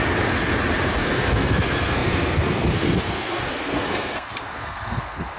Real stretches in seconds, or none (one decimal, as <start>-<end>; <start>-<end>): 0.0-1.0